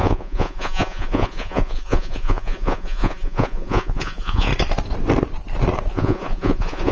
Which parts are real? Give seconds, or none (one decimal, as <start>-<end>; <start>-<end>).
4.5-5.9